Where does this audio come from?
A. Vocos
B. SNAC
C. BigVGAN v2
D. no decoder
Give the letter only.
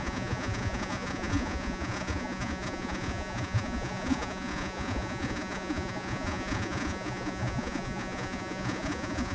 A